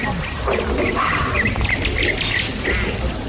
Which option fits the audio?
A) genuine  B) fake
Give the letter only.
B